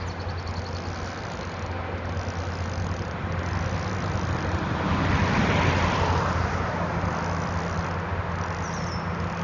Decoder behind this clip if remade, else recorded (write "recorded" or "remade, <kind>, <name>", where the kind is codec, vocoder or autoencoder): recorded